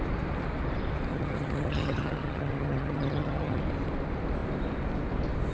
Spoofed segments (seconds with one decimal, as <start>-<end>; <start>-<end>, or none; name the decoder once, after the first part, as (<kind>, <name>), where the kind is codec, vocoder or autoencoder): 1.1-3.6 (vocoder, HiFi-GAN)